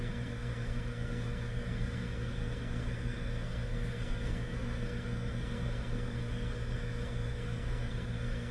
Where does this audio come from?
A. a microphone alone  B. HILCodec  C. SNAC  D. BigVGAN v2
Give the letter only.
C